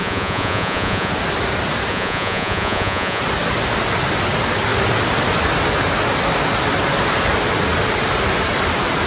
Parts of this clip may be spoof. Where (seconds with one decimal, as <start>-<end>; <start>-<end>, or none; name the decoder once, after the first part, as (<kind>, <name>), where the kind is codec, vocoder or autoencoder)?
0.0-1.1 (vocoder, Vocos); 1.9-3.2